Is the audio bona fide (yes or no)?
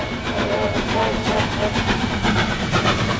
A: no